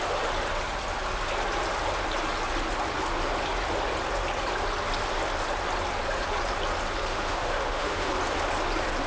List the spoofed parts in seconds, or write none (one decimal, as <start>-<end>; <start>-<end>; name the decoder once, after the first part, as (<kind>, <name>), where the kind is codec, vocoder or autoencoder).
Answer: 7.1-8.1 (autoencoder, DAC-VAE)